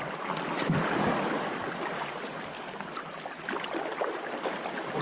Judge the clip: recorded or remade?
recorded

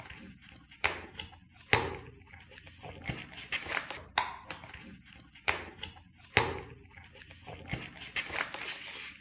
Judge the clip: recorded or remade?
recorded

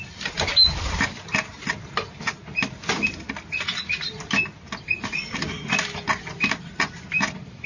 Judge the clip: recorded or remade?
recorded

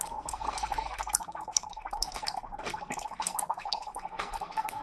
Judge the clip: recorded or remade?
remade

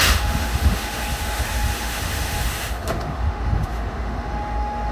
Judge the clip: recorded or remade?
remade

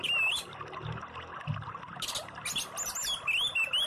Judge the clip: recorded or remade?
recorded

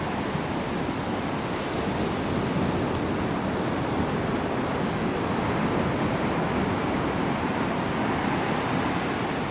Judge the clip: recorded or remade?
recorded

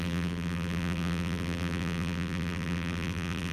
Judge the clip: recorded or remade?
remade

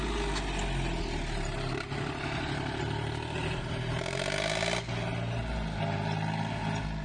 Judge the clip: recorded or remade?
recorded